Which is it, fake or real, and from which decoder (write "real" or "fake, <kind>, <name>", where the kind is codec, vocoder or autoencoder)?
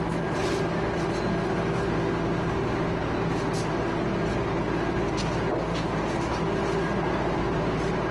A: real